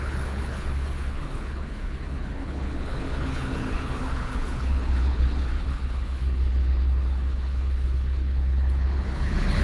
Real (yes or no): no